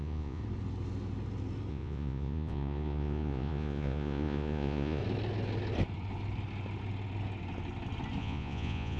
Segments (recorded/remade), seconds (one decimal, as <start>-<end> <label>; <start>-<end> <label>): 0.0-0.4 remade; 0.4-1.7 recorded; 1.7-5.0 remade; 5.0-8.2 recorded; 8.2-9.0 remade